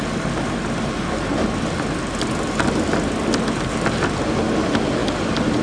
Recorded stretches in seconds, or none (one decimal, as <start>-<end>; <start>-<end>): 0.0-5.6

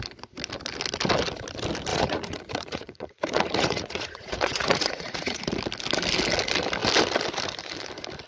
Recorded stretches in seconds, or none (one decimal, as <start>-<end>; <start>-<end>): 0.0-1.9; 5.4-8.3

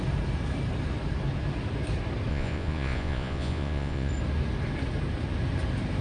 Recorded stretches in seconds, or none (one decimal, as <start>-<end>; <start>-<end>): 0.0-2.3; 4.1-6.0

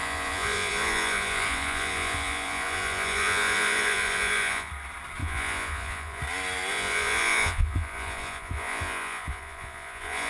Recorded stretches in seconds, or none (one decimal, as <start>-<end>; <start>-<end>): 4.7-5.2; 6.2-6.7

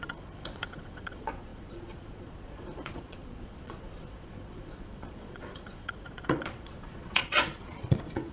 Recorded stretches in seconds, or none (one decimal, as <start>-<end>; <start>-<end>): none

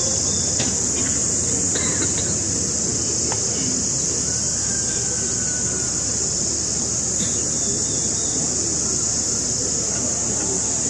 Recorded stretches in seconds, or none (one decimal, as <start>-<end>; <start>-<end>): 0.0-10.9

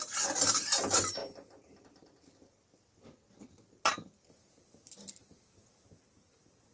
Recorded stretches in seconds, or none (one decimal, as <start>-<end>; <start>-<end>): 0.0-6.7